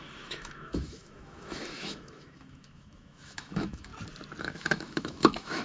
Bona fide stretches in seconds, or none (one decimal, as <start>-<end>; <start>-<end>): 3.9-4.4